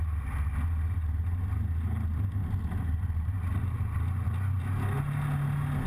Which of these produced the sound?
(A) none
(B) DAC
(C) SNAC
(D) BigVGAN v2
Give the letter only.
A